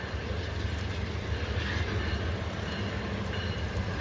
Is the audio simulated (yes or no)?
no